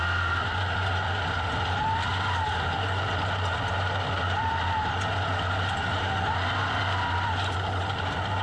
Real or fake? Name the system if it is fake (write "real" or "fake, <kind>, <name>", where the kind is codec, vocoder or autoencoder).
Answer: real